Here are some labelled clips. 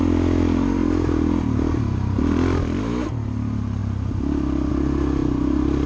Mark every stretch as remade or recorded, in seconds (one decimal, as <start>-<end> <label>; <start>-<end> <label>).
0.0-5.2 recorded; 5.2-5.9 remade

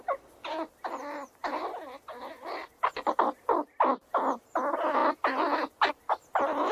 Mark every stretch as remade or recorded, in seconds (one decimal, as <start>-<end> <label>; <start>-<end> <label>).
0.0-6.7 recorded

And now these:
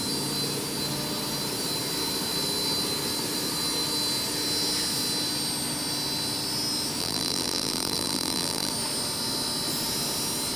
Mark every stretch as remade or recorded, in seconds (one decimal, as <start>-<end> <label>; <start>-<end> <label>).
0.0-7.0 recorded; 7.0-8.7 remade; 8.7-10.6 recorded